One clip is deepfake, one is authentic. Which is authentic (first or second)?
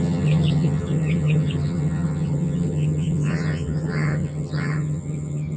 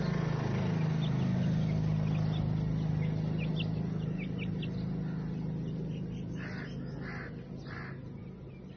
second